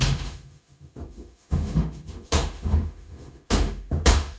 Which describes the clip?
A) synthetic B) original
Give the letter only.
A